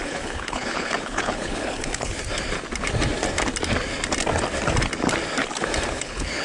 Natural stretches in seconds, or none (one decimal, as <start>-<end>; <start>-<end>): 2.1-5.9